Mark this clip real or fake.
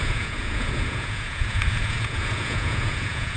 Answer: fake